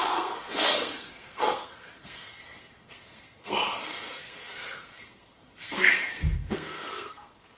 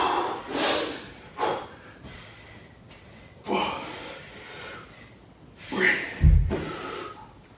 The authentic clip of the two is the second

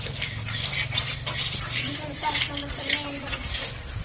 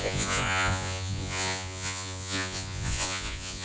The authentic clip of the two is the first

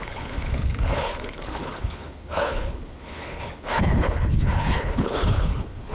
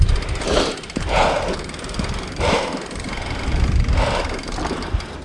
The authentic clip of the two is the second